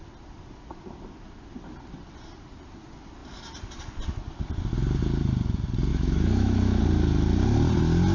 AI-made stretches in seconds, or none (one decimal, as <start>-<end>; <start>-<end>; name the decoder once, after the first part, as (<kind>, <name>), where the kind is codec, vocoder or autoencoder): 5.9-6.8 (autoencoder, DAC-VAE)